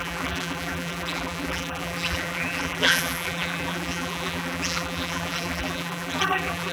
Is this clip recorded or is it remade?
remade